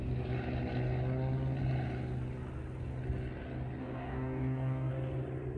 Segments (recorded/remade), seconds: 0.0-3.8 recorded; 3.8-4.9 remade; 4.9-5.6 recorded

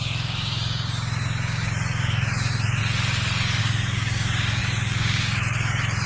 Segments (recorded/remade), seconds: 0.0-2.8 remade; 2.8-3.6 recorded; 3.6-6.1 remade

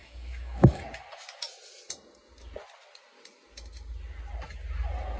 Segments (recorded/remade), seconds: 0.0-0.8 remade; 0.8-5.2 recorded

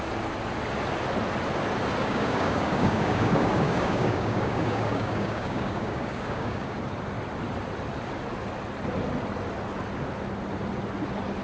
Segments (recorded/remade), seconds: 0.0-2.0 recorded; 2.0-6.8 remade; 6.8-11.4 recorded